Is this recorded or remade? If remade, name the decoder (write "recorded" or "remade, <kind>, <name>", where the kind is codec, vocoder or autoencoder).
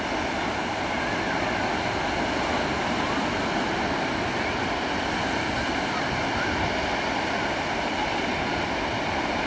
recorded